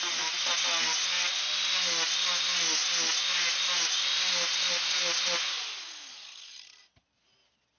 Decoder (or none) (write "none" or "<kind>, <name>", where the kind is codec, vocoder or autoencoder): none